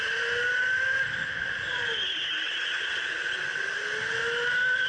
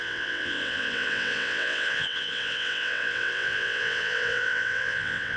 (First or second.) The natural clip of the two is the first